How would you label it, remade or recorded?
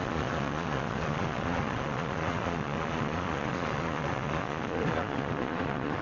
remade